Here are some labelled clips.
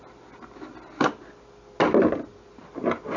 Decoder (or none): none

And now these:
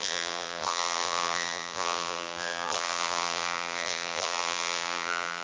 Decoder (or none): vocoder, BigVGAN v2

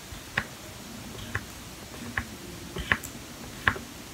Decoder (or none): none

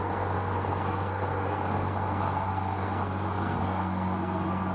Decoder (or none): codec, SNAC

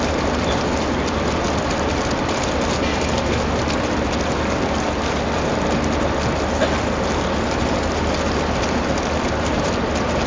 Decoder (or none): none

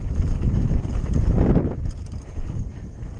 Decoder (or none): none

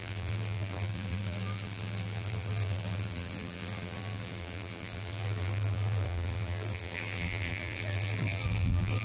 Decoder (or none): vocoder, BigVGAN v2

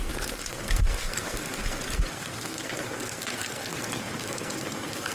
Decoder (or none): codec, SNAC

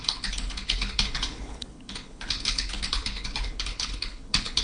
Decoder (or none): codec, HILCodec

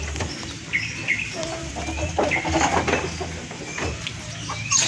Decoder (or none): none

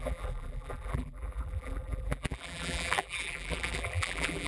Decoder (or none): vocoder, BigVGAN v2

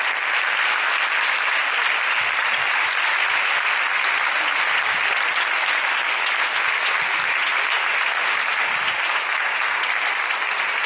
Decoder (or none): none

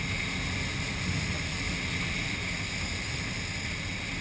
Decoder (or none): none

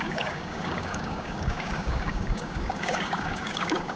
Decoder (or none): codec, DAC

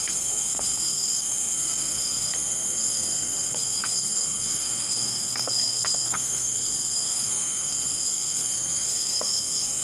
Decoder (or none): codec, SNAC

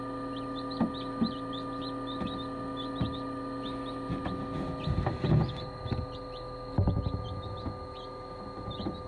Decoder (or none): none